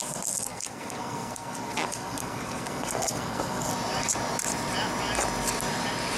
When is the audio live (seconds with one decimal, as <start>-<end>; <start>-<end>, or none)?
3.7-6.2